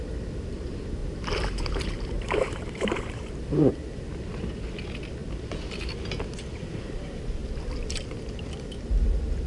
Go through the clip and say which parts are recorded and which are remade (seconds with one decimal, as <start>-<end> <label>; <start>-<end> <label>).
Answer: 0.0-1.0 recorded; 1.0-3.3 remade; 3.3-9.5 recorded

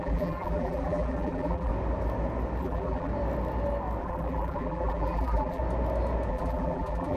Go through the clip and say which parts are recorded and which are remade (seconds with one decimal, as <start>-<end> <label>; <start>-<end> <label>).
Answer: 0.0-1.7 remade; 1.7-2.6 recorded; 2.6-3.1 remade; 3.1-4.0 recorded; 4.0-5.6 remade; 5.6-6.3 recorded; 6.3-7.2 remade

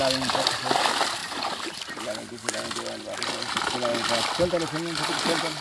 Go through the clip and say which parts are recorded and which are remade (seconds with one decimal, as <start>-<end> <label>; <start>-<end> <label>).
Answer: 0.0-1.2 recorded; 1.2-1.9 remade; 1.9-5.6 recorded

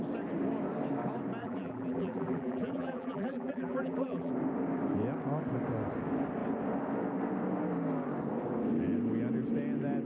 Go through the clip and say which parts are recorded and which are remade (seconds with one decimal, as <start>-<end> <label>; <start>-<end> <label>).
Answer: 0.0-1.4 recorded; 1.4-4.3 remade; 4.3-10.1 recorded

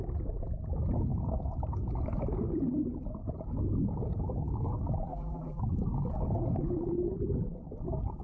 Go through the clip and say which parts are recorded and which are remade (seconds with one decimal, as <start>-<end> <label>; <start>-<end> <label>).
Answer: 0.0-5.1 recorded; 5.1-5.6 remade; 5.6-8.2 recorded

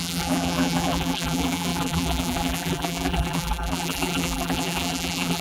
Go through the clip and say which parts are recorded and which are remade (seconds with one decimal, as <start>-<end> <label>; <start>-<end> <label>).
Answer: 0.0-5.4 remade

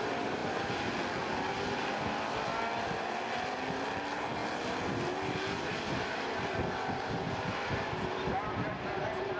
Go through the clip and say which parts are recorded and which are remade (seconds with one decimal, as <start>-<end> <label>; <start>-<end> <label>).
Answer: 0.0-0.4 remade; 0.4-2.8 recorded; 2.8-4.4 remade; 4.4-5.7 recorded; 5.7-9.4 remade